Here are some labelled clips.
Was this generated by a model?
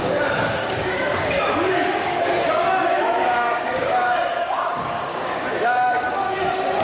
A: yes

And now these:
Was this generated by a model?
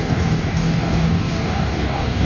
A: yes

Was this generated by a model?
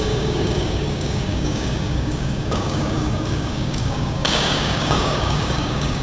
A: yes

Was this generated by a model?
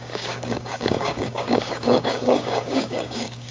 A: yes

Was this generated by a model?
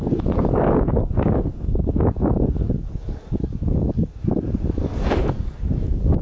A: yes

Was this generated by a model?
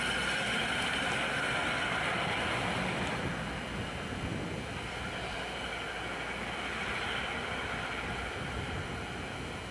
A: no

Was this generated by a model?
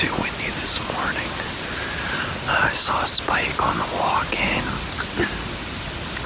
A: no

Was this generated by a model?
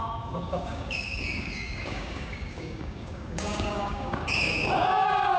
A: yes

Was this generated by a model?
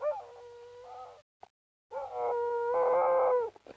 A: no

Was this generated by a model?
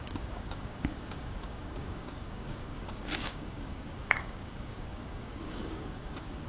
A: yes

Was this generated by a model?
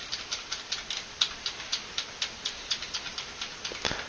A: no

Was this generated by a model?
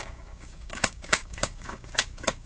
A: yes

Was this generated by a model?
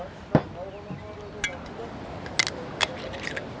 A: no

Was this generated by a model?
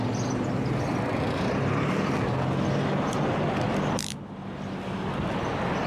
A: no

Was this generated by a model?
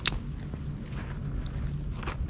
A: no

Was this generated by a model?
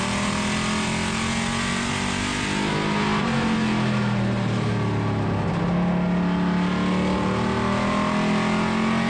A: no